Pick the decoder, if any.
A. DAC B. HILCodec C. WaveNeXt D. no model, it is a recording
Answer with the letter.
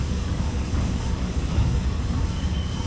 A